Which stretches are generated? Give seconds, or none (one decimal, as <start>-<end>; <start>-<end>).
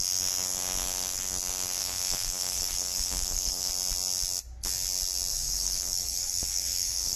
1.8-3.7; 5.3-7.2